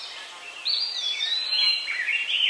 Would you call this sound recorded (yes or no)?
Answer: no